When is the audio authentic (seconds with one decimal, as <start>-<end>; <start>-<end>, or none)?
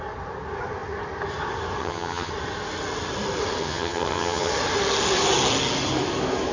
0.0-1.8; 2.3-3.6; 4.5-6.5